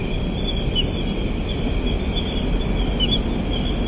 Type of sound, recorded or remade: recorded